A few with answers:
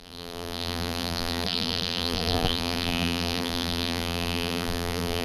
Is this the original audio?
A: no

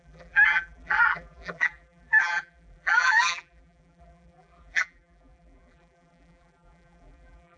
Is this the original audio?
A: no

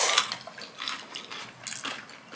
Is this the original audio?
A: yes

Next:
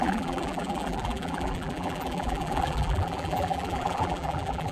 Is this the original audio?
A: no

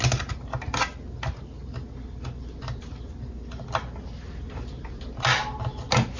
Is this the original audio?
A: yes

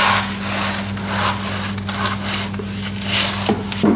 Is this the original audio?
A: yes